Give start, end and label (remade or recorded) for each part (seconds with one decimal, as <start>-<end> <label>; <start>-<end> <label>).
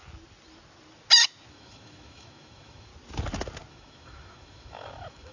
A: 0.0-1.5 recorded; 1.5-2.9 remade; 2.9-3.7 recorded; 3.7-5.3 remade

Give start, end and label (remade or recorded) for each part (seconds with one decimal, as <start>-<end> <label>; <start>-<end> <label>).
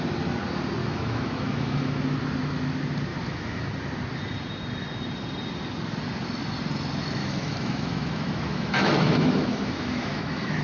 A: 0.0-0.8 recorded; 0.8-2.0 remade; 2.0-3.1 recorded; 3.1-3.7 remade; 3.7-7.2 recorded; 7.2-10.6 remade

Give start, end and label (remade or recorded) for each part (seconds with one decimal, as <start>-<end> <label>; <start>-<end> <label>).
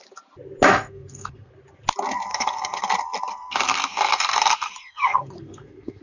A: 0.0-0.7 recorded; 0.7-1.5 remade; 1.5-2.3 recorded; 2.3-2.9 remade; 2.9-3.3 recorded; 3.3-6.0 remade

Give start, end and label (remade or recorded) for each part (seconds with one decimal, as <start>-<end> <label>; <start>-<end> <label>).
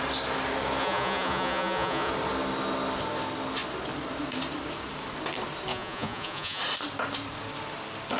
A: 0.0-0.8 recorded; 0.8-2.1 remade; 2.1-5.7 recorded; 5.7-6.6 remade; 6.6-8.2 recorded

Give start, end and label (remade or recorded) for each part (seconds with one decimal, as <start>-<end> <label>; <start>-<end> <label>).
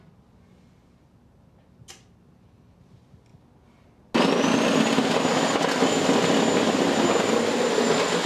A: 0.0-8.3 recorded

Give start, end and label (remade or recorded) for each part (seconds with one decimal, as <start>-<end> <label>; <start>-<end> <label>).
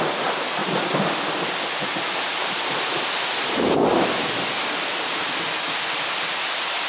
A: 0.0-6.9 recorded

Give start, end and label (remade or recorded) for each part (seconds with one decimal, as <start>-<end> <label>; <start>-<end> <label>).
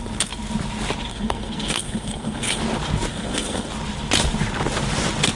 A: 0.0-1.1 recorded; 1.1-2.6 remade; 2.6-3.1 recorded; 3.1-3.7 remade; 3.7-5.4 recorded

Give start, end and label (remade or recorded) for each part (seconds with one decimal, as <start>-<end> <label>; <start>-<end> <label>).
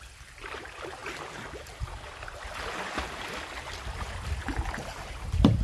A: 0.0-5.6 recorded